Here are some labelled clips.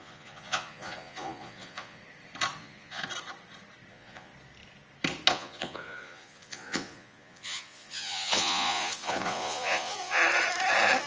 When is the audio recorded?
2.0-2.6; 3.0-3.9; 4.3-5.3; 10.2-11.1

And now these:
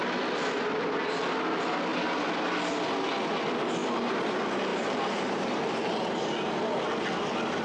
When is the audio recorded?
0.0-4.7; 6.3-7.6

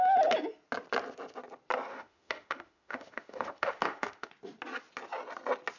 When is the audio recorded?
0.0-1.9; 4.3-5.8

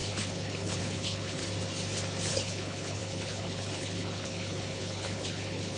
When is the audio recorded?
1.4-2.3

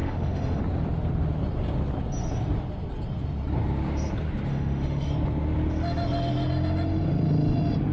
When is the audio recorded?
0.6-4.5; 5.1-7.9

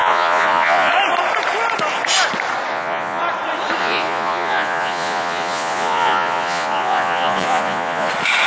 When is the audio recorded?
0.9-2.7; 3.2-3.8; 8.1-8.5